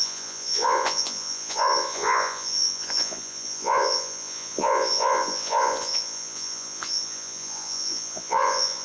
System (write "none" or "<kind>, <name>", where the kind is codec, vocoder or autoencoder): vocoder, Vocos